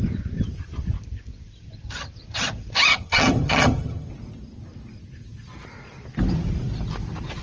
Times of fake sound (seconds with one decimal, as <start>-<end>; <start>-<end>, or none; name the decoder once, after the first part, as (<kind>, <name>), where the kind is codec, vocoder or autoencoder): 2.9-4.1 (vocoder, HiFi-GAN)